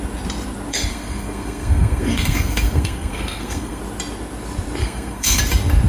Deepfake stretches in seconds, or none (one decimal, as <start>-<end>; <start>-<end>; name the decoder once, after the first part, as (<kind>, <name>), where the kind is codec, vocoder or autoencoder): 0.7-3.8 (codec, SNAC); 4.8-5.4